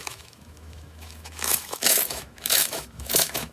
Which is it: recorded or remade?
remade